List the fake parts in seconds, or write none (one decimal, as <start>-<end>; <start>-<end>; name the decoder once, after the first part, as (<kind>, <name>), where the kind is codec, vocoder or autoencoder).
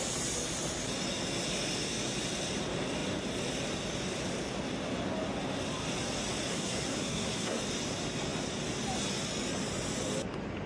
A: 6.5-7.6 (codec, SNAC)